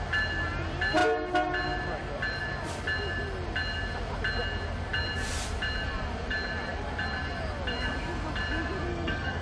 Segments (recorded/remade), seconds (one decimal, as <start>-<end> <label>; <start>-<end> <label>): 0.0-8.9 recorded; 8.9-9.4 remade